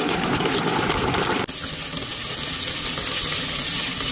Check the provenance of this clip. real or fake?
real